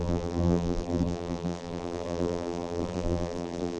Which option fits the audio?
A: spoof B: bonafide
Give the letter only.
A